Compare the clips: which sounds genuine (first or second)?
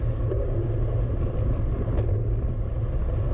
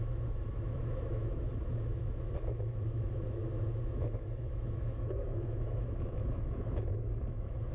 first